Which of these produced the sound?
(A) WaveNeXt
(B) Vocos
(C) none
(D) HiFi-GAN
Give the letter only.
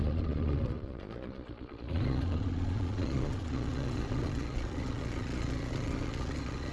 B